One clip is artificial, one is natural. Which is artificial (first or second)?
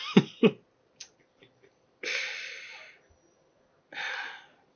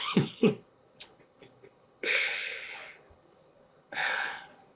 second